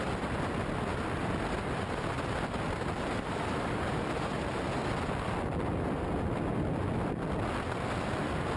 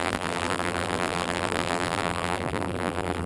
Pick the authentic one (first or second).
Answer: first